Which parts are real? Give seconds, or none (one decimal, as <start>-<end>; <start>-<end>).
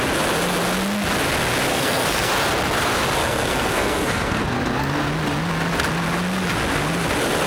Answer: 0.0-1.7; 2.3-3.2; 4.4-7.5